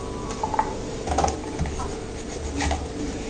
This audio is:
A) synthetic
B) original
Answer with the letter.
B